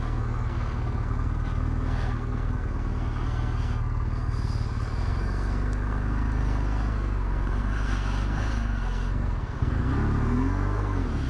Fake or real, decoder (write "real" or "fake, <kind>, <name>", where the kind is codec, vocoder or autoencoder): fake, codec, SNAC